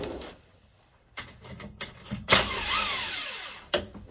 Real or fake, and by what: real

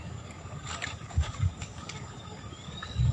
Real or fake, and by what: fake, codec, DAC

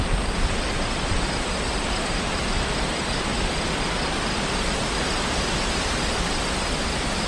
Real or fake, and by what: real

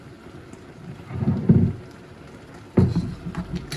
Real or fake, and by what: real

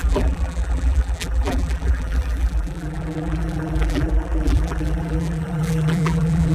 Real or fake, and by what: fake, vocoder, BigVGAN v2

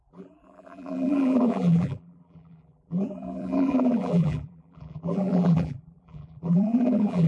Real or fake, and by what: fake, vocoder, BigVGAN v2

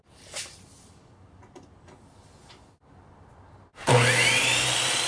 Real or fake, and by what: real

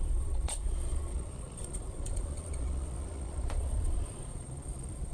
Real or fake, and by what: fake, vocoder, Vocos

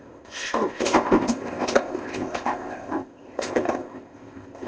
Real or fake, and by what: fake, codec, ZipCodec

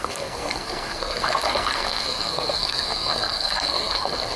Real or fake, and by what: fake, codec, SNAC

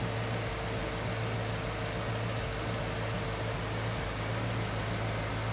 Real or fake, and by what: real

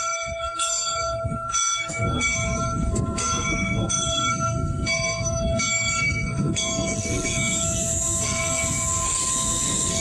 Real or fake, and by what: fake, codec, SNAC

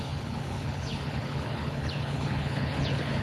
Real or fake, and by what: fake, codec, HILCodec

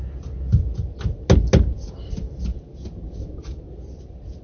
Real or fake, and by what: real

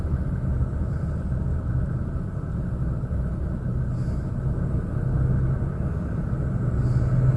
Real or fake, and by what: real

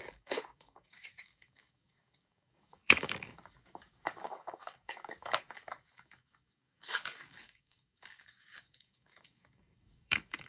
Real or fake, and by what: fake, codec, DAC